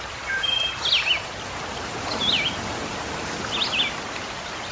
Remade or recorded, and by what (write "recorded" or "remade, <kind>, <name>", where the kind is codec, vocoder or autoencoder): recorded